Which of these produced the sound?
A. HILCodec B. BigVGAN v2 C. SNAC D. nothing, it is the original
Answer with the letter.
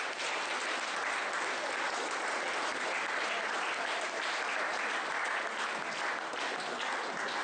D